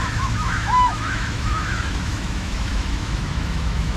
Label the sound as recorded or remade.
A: remade